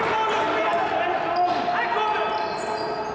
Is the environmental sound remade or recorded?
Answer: recorded